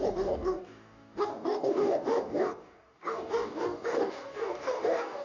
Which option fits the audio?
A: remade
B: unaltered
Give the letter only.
A